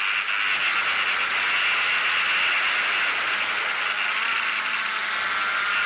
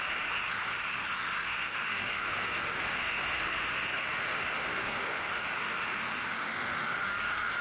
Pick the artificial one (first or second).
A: second